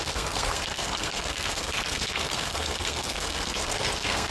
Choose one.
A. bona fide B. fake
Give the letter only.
B